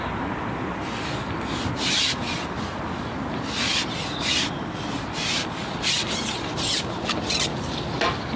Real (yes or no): yes